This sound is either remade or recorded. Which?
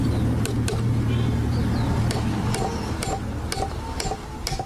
recorded